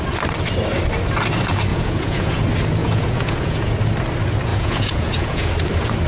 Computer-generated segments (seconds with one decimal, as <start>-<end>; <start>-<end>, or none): 1.7-2.4; 2.8-3.8; 4.5-5.5